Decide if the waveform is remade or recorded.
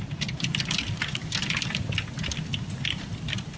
recorded